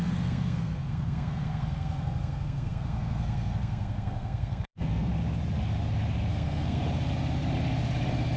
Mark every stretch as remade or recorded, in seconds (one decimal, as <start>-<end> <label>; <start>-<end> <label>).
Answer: 0.0-5.1 remade; 5.1-6.3 recorded; 6.3-6.8 remade; 6.8-8.4 recorded